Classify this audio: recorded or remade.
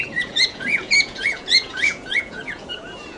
remade